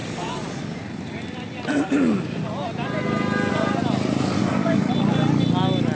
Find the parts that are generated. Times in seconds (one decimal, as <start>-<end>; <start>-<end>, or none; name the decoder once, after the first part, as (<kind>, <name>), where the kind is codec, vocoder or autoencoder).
4.4-4.9 (codec, DAC)